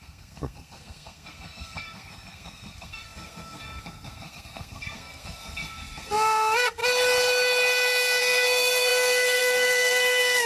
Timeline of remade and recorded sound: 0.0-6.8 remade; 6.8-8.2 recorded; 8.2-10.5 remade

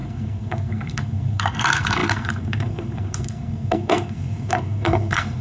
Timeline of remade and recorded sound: 0.0-5.4 remade

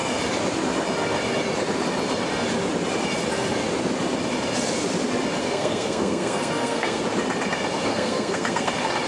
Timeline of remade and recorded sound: 0.0-5.4 recorded; 5.4-7.0 remade; 7.0-7.9 recorded; 7.9-8.7 remade; 8.7-9.1 recorded

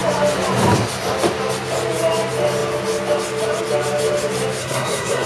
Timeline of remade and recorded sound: 0.0-4.6 recorded; 4.6-5.3 remade

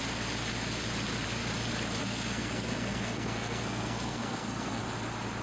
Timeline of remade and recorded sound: 0.0-2.0 recorded; 2.0-4.8 remade; 4.8-5.4 recorded